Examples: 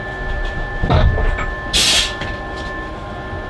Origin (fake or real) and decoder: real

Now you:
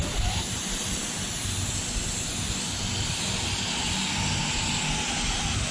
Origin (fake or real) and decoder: real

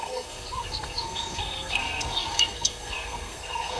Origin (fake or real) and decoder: fake, codec, SNAC